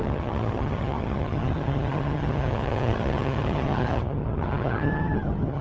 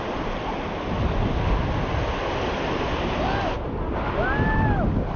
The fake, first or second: first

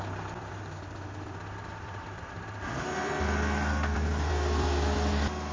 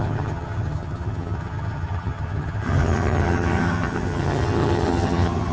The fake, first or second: second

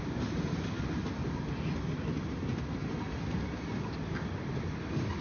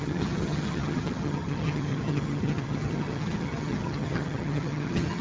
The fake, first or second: second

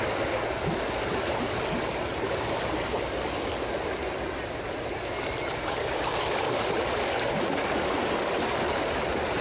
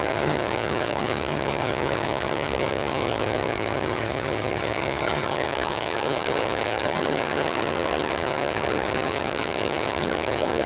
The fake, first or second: second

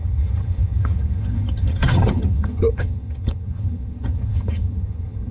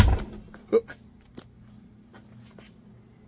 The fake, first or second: first